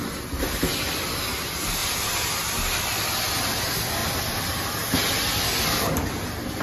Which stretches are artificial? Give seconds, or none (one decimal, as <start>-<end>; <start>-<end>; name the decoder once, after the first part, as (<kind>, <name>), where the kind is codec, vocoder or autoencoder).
none